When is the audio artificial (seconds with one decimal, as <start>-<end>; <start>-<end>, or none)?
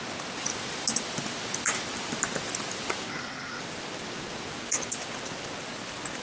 3.1-3.6